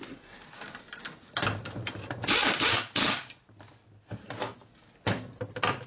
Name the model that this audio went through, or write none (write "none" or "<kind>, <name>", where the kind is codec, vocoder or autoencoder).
none